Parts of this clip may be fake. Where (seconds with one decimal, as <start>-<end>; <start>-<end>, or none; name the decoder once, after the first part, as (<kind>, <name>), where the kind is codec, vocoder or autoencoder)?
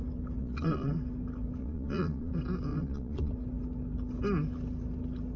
0.4-0.9 (vocoder, Vocos); 1.6-2.3; 2.7-3.3